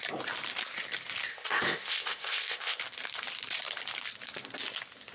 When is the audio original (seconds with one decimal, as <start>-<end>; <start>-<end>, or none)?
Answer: 0.0-1.3; 2.8-5.1